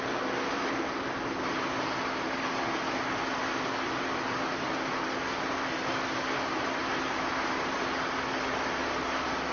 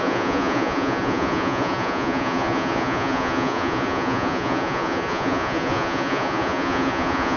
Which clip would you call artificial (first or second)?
second